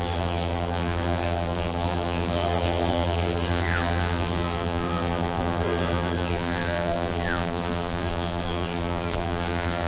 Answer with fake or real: fake